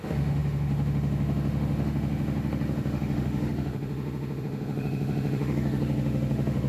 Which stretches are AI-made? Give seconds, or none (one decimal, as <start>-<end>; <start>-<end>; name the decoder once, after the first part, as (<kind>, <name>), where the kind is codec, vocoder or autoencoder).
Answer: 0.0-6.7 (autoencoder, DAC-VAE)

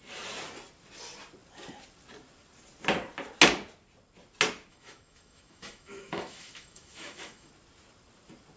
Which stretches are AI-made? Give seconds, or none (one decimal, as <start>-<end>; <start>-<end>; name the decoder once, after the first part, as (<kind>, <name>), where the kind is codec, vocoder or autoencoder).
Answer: 4.7-7.5 (autoencoder, DAC-VAE)

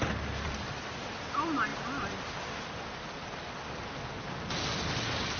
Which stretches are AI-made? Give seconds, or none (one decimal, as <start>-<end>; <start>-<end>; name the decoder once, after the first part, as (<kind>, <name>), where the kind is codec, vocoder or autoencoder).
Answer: none

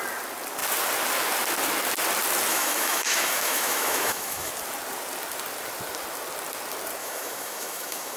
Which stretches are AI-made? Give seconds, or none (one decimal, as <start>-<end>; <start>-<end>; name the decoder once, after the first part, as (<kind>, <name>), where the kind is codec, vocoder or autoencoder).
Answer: 2.5-4.5 (autoencoder, DAC-VAE); 7.0-8.2

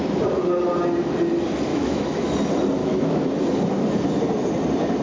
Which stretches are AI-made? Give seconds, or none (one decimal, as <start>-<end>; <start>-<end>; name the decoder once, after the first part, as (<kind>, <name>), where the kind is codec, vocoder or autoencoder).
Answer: 1.7-2.3 (autoencoder, DAC-VAE); 2.8-3.3

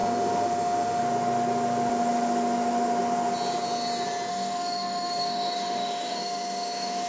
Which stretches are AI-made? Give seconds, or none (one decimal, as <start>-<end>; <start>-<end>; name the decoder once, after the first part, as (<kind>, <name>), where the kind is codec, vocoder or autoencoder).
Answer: 0.0-1.0 (autoencoder, DAC-VAE); 4.3-7.1